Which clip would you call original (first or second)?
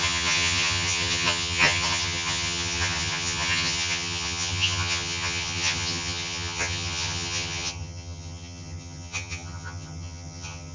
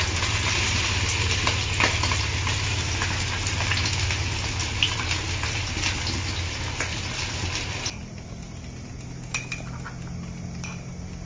second